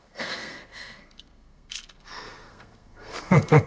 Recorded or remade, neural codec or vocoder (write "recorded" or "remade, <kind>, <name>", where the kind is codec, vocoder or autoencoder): remade, codec, SNAC